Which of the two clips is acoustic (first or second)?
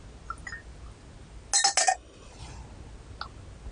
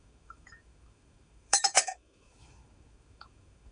first